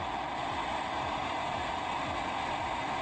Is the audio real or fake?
real